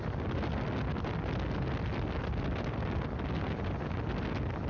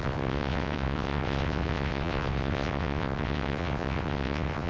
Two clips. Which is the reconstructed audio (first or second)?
second